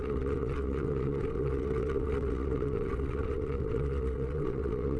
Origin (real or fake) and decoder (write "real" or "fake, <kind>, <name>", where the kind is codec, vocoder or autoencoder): fake, vocoder, WaveNeXt